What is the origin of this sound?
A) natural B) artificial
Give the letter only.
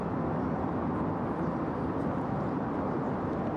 A